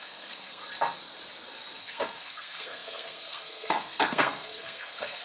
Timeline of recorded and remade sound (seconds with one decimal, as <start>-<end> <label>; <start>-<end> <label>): 0.0-0.6 remade; 0.6-1.8 recorded; 1.8-5.2 remade